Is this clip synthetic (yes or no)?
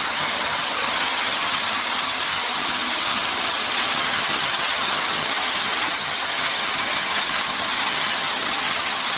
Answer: yes